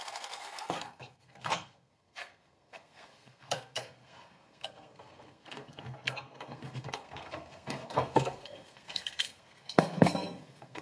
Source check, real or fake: fake